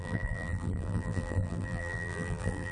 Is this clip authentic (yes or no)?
no